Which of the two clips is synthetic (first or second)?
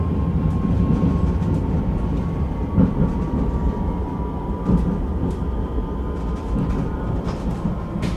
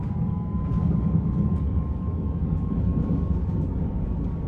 second